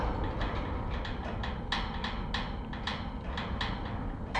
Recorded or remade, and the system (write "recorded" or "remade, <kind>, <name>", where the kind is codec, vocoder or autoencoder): recorded